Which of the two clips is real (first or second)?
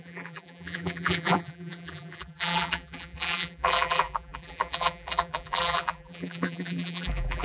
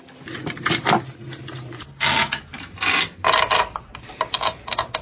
second